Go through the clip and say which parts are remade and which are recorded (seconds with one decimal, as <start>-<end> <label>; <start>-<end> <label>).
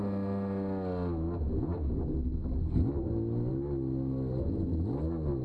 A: 0.0-5.4 recorded